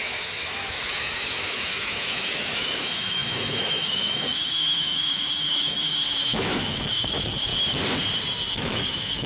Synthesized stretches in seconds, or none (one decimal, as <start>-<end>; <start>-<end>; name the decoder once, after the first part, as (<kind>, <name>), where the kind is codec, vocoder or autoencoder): 0.0-7.5 (autoencoder, DAC-VAE); 8.5-9.3